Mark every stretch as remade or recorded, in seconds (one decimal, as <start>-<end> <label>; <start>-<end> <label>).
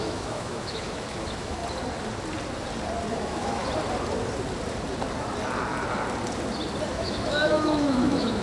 0.0-1.6 remade; 1.6-3.1 recorded; 3.1-3.6 remade; 3.6-6.9 recorded; 6.9-8.4 remade